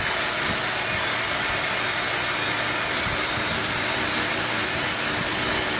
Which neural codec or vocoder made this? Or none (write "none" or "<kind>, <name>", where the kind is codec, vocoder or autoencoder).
none